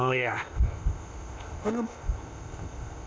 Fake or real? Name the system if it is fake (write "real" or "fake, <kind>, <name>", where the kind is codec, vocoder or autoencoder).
fake, codec, ZipCodec